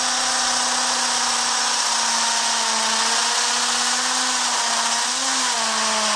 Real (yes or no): yes